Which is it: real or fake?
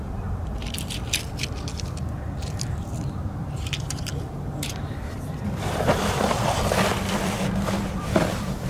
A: fake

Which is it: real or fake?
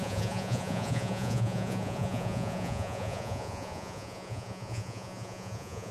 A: fake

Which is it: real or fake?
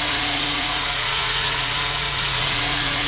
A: fake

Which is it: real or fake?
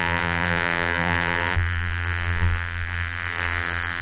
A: fake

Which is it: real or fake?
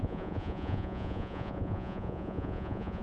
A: fake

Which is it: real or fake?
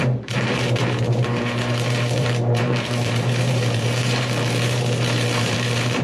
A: fake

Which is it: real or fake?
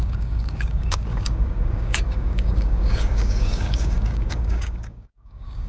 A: fake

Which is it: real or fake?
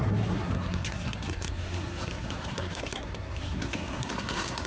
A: fake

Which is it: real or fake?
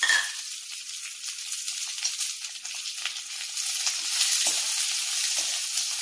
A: real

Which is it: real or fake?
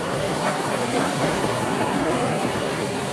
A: fake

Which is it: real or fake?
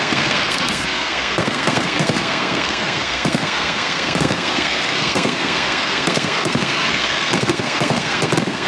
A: fake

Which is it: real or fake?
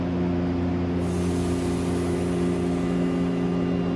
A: real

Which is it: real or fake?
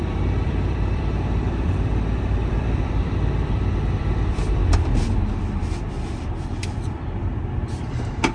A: fake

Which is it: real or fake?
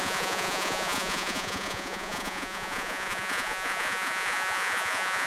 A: fake